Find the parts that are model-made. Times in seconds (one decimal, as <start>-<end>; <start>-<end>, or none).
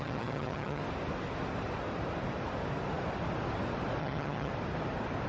0.0-0.8; 4.0-4.5